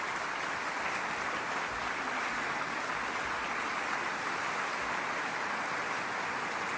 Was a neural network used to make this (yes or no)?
no